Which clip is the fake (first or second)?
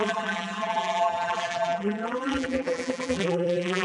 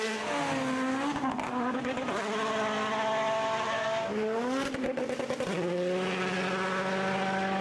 first